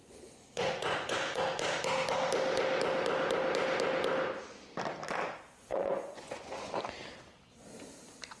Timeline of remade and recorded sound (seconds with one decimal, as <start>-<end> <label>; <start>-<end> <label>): 0.0-1.4 remade; 1.4-5.7 recorded; 5.7-6.7 remade; 6.7-8.4 recorded